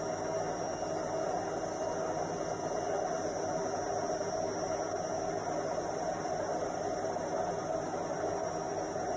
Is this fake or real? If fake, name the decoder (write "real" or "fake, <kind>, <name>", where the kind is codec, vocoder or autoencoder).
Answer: real